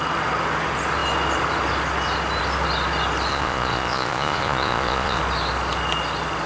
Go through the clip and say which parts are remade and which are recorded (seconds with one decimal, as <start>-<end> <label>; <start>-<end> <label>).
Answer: 0.0-3.3 recorded; 3.3-5.2 remade; 5.2-6.5 recorded